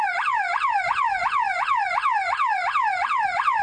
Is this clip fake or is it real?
fake